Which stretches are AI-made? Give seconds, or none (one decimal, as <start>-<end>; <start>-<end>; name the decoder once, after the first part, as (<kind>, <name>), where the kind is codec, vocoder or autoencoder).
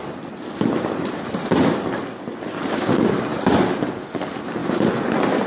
none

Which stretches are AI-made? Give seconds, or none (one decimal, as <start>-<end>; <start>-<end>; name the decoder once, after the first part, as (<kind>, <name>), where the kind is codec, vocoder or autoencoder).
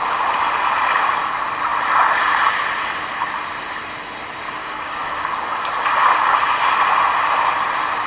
4.6-5.3 (codec, DAC)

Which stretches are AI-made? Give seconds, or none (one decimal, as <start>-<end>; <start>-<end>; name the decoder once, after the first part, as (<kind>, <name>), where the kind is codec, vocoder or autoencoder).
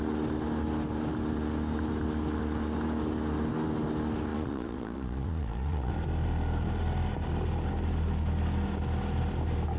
4.3-5.9 (vocoder, Vocos)